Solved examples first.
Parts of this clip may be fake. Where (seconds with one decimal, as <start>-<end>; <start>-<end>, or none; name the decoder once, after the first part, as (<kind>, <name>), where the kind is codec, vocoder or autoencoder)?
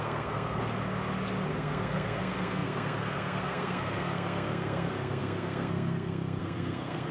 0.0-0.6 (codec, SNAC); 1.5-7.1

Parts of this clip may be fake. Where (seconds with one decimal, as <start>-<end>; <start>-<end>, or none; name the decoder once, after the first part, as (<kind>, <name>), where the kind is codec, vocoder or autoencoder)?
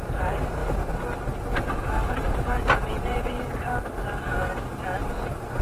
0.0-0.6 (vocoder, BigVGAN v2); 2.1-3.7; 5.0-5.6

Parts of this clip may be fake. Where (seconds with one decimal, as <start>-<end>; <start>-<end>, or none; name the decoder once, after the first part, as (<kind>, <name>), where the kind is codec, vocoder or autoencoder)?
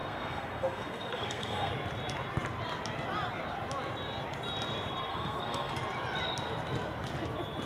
0.0-1.7 (codec, SNAC); 5.1-5.7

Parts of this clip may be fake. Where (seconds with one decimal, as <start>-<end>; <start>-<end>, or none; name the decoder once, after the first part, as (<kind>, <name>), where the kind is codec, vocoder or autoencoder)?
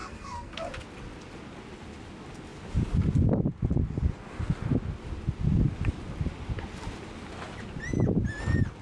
0.0-0.7 (codec, SNAC)